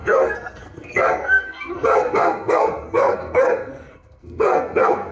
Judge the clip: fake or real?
fake